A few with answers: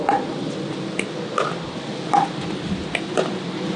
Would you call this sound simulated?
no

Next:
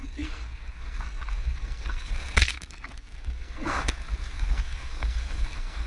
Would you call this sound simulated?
yes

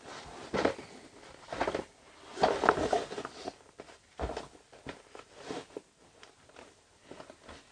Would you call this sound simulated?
no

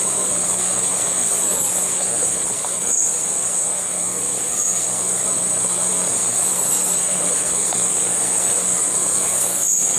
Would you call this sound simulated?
yes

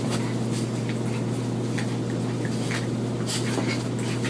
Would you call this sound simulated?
no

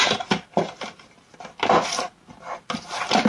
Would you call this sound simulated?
no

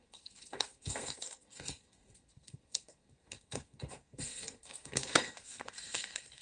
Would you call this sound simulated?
yes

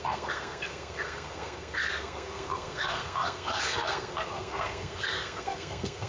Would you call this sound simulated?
yes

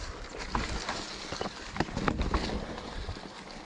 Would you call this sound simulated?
no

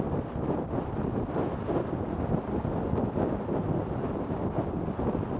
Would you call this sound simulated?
no